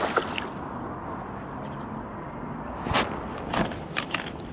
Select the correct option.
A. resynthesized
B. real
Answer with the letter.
B